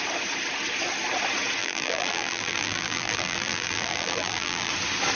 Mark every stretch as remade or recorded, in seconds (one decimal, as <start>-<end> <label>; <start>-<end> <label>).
0.0-1.6 recorded; 1.6-4.7 remade; 4.7-5.2 recorded